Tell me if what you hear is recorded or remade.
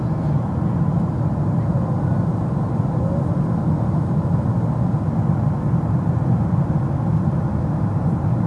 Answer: recorded